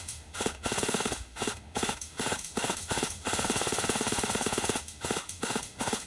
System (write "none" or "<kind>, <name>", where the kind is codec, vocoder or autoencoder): autoencoder, DAC-VAE